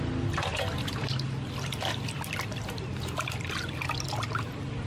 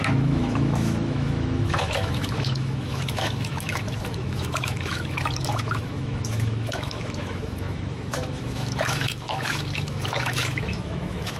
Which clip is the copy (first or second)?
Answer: second